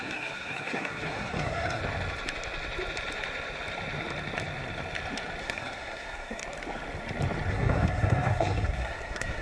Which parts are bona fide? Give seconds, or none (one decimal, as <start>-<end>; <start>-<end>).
1.8-5.4; 6.4-7.5